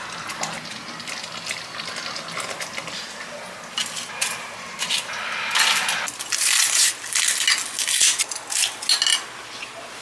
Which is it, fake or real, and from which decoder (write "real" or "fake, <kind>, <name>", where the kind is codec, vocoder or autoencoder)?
real